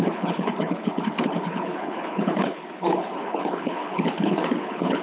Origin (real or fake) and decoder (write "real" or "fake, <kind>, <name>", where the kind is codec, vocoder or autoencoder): fake, codec, HILCodec